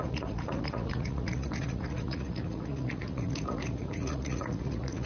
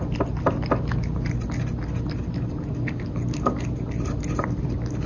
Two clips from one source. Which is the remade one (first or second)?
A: first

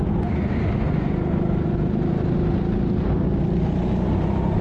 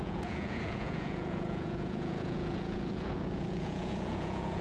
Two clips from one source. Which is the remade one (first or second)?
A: second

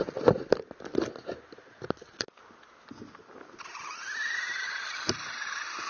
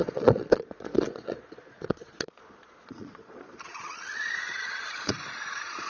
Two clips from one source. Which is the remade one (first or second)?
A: second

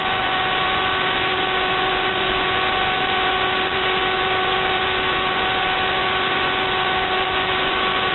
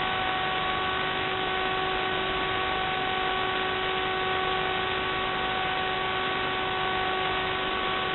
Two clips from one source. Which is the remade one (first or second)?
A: first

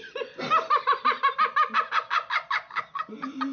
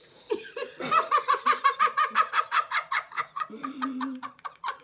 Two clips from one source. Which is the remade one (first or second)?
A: second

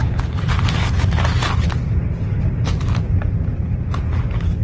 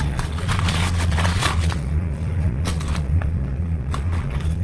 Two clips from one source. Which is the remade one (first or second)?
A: second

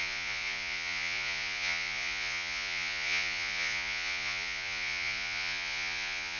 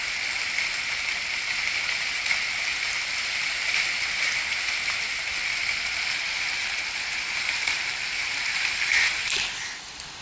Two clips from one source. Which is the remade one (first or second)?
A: first